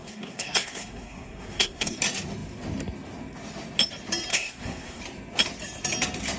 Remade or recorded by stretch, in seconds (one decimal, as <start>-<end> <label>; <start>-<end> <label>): 0.0-2.0 remade; 2.0-4.3 recorded; 4.3-5.0 remade; 5.0-6.4 recorded